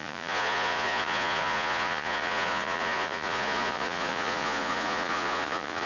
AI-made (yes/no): yes